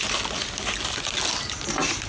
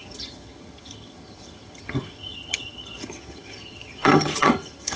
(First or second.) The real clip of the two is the first